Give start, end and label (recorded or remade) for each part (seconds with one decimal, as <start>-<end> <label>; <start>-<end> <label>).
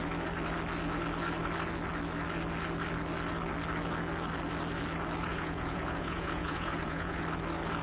0.0-5.3 recorded; 5.3-7.2 remade; 7.2-7.8 recorded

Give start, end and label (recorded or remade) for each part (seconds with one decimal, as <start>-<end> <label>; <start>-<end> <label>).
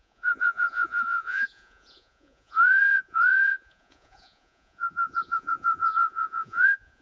0.0-7.0 remade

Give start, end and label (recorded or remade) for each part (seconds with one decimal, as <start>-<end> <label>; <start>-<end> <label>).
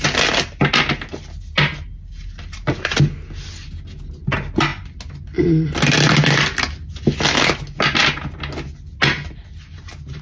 0.0-10.2 recorded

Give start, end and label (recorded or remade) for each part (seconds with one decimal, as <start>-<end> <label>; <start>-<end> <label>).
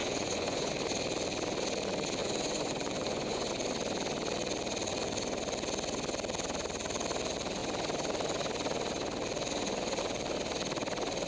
0.0-0.7 remade; 0.7-2.2 recorded; 2.2-3.5 remade; 3.5-11.3 recorded